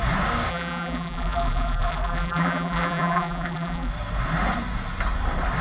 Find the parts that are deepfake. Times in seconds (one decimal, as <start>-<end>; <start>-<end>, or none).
0.5-3.9